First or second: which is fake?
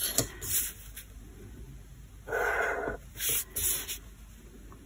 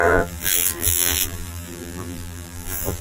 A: second